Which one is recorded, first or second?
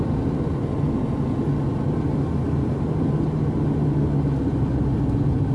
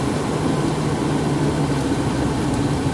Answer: first